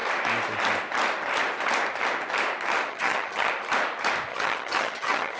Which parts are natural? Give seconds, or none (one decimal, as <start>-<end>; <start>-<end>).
0.0-2.9; 3.5-4.3